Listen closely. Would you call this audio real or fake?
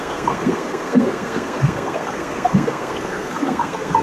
fake